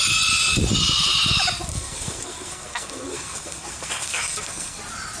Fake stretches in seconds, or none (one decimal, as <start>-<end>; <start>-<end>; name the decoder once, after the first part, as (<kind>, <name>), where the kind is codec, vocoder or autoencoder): 1.7-4.8 (codec, SNAC)